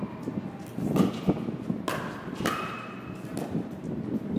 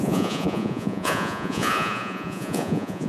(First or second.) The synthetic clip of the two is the second